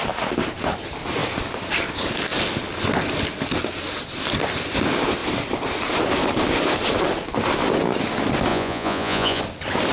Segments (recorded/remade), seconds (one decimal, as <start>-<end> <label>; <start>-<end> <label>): 0.0-8.5 recorded; 8.5-9.4 remade; 9.4-9.9 recorded